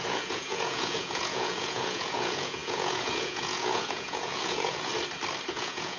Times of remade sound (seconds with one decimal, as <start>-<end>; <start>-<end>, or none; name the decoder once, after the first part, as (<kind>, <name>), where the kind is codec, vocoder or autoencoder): 0.0-4.9 (vocoder, Vocos); 5.5-6.0